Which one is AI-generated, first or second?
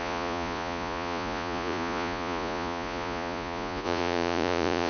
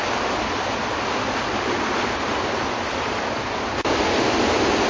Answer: first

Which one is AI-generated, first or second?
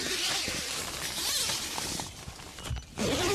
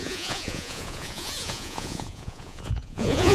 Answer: second